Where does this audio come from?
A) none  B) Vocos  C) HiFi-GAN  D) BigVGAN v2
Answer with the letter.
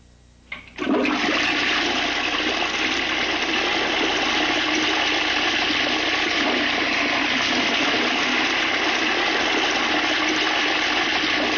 A